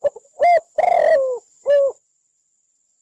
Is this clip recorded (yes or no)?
yes